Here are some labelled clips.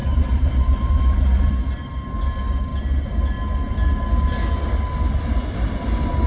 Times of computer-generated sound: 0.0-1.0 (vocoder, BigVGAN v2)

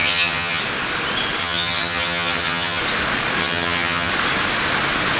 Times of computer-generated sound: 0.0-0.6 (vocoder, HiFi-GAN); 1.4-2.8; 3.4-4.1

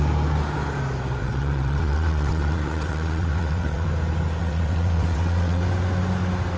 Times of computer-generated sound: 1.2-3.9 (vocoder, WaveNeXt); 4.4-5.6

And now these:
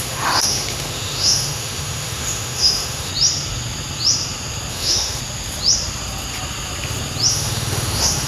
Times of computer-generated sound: 0.0-3.1 (autoencoder, DAC-VAE); 4.7-5.2; 7.3-8.3

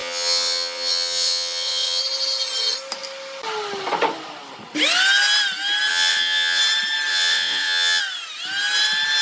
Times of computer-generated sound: 0.0-2.0 (vocoder, WaveNeXt); 5.9-6.6; 7.1-8.0

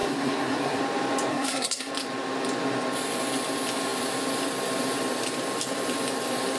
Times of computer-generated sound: 0.0-0.8 (codec, SNAC); 1.3-1.9

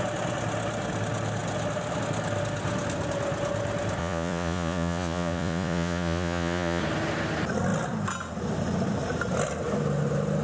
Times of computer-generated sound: 4.0-6.8 (vocoder, Vocos)